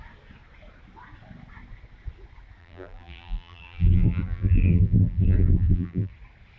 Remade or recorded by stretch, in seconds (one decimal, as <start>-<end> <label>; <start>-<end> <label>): 0.0-2.6 recorded; 2.6-6.1 remade; 6.1-6.6 recorded